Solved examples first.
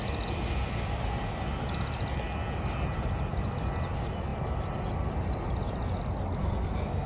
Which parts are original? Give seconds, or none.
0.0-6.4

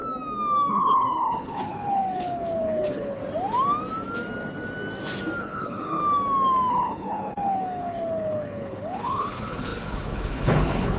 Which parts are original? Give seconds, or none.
0.0-0.7; 3.2-5.4; 6.0-6.7

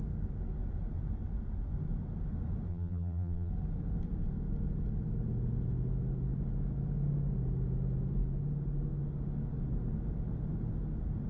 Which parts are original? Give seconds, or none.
0.0-2.7; 3.5-11.3

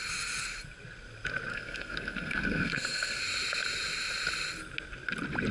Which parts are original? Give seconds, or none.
0.0-1.5; 3.2-5.5

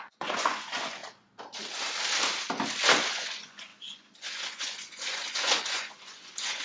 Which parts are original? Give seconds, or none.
1.0-3.1

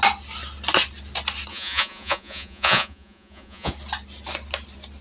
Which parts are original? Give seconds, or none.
0.0-1.5; 3.7-5.0